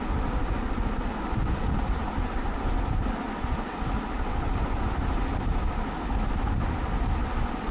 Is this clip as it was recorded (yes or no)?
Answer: yes